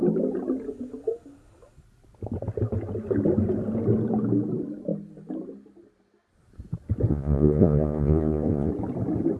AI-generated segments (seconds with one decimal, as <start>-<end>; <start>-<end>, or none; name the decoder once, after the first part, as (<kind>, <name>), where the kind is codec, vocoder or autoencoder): 7.1-8.7 (vocoder, Vocos)

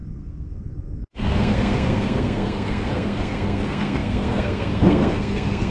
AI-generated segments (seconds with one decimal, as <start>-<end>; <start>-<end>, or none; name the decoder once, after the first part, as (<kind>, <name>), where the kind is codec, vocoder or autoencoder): 0.0-5.7 (codec, SNAC)